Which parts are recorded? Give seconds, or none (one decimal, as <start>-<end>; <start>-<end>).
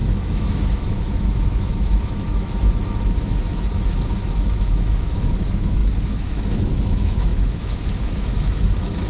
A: none